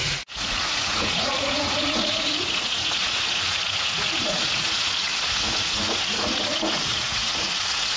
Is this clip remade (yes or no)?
yes